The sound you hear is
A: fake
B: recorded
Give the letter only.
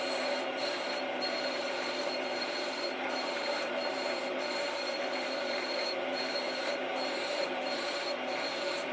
A